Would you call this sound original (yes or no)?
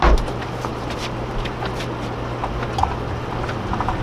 yes